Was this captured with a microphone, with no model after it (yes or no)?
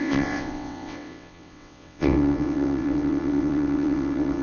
no